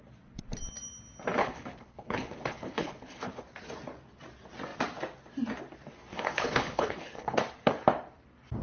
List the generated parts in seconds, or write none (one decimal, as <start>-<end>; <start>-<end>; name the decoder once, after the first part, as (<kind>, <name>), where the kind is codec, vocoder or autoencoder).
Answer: 1.4-3.4 (codec, HILCodec); 6.1-7.4